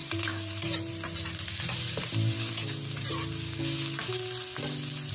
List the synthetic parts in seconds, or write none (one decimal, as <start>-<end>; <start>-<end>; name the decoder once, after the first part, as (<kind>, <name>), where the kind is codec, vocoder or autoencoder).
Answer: 0.0-3.1 (vocoder, BigVGAN v2)

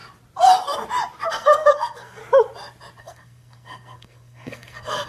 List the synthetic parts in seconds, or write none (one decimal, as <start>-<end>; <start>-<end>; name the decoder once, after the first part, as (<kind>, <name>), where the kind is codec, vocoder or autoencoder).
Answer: 1.3-2.2 (codec, SNAC); 3.0-5.1

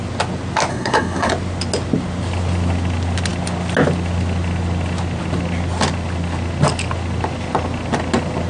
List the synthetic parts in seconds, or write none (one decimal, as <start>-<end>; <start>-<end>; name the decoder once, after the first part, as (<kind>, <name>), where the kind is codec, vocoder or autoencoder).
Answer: 0.7-1.3 (codec, SNAC)

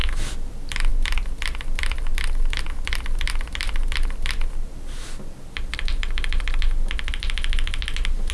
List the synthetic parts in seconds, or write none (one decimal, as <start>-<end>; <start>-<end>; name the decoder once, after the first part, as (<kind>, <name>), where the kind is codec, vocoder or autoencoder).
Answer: none

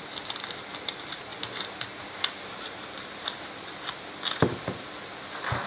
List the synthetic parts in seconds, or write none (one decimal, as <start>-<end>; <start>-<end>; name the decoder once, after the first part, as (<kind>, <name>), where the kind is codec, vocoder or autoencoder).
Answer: none

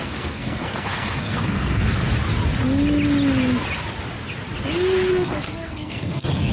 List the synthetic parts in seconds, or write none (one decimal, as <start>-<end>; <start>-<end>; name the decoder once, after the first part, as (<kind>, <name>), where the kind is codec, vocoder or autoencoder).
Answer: 0.0-2.0 (codec, SNAC); 5.1-6.5

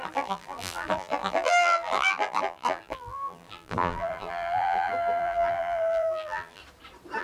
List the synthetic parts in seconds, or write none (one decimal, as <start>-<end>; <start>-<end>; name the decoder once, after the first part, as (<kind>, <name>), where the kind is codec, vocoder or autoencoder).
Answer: 0.0-6.6 (vocoder, BigVGAN v2)